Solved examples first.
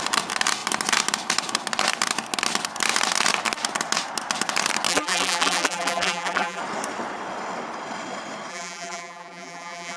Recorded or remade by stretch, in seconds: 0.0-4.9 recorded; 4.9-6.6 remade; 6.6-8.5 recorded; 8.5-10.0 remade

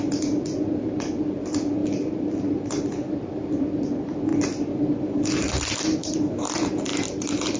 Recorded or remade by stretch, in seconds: 0.0-4.3 remade; 4.3-5.8 recorded; 5.8-6.9 remade; 6.9-7.6 recorded

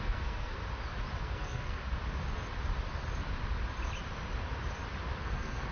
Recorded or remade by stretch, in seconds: 0.0-0.6 remade; 0.6-1.2 recorded; 1.2-1.8 remade; 1.8-5.2 recorded; 5.2-5.7 remade

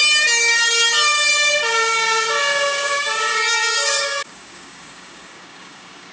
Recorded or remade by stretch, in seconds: 0.0-2.5 recorded; 2.5-6.1 remade

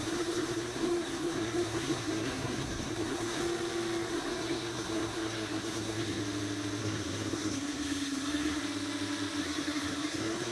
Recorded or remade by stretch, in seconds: 0.0-3.4 remade; 3.4-4.1 recorded; 4.1-6.2 remade; 6.2-6.8 recorded; 6.8-8.6 remade; 8.6-9.4 recorded; 9.4-10.5 remade